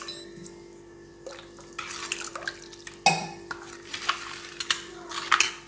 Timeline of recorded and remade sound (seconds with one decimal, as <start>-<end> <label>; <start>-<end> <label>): 0.0-5.7 recorded